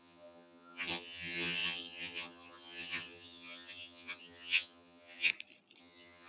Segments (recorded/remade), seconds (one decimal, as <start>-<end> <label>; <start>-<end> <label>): 0.0-5.3 remade; 5.3-5.8 recorded; 5.8-6.3 remade

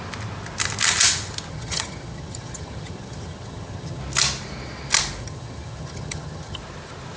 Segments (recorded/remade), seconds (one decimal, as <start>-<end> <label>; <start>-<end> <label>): 0.0-1.5 recorded; 1.5-4.0 remade; 4.0-5.2 recorded; 5.2-6.6 remade; 6.6-7.2 recorded

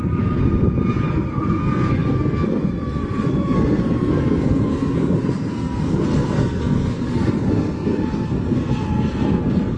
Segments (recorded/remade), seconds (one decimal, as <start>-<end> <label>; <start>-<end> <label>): 0.0-0.4 remade; 0.4-1.1 recorded; 1.1-9.8 remade

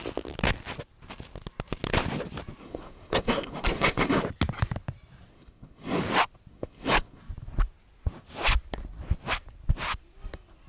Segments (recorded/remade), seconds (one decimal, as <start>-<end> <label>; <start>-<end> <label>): 0.0-2.6 recorded; 2.6-4.2 remade; 4.2-5.3 recorded; 5.3-6.0 remade; 6.0-6.5 recorded; 6.5-7.2 remade; 7.2-10.7 recorded